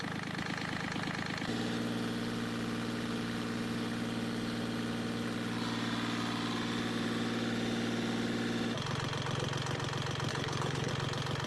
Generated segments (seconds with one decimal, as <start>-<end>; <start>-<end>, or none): 10.3-10.9